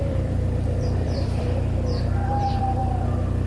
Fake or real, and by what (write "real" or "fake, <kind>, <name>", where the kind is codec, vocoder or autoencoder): fake, vocoder, BigVGAN v2